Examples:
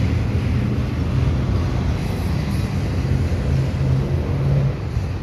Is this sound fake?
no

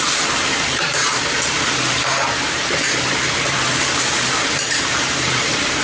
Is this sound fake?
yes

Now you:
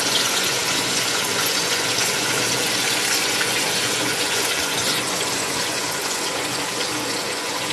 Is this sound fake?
yes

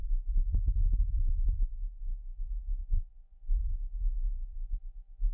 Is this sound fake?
yes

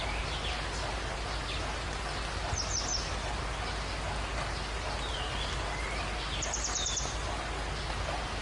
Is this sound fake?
no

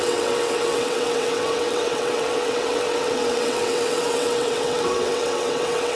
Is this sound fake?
yes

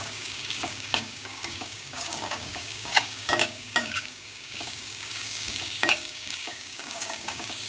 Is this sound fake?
yes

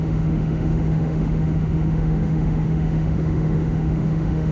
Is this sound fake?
yes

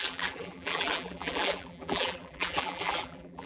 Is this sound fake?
yes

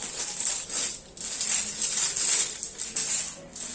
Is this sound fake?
no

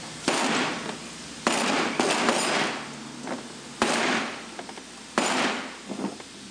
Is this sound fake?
no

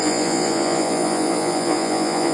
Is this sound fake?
yes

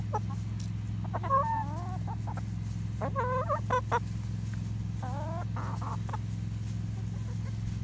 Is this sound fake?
no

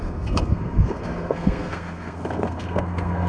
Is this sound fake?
yes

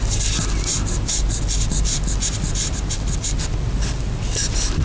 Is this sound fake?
no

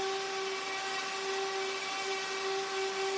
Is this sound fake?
no